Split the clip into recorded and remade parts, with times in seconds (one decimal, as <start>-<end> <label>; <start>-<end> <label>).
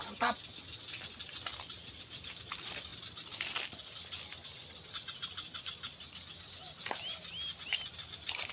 0.0-8.5 recorded